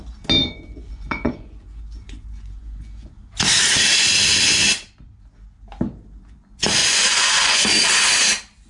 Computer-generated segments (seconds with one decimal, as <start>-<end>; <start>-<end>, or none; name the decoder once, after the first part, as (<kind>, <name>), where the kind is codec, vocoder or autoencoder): 0.4-3.1 (vocoder, Vocos); 6.8-7.6